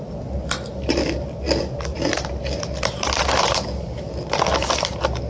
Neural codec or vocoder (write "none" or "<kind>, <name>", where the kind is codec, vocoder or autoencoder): none